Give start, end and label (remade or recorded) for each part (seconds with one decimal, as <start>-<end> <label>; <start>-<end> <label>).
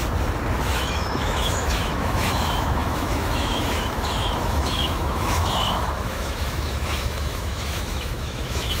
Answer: 0.0-0.6 recorded; 0.6-8.8 remade